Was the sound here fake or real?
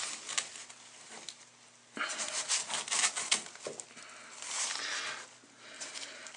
real